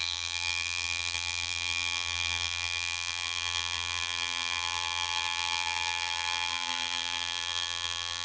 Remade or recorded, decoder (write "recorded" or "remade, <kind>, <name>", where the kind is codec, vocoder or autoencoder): remade, vocoder, BigVGAN v2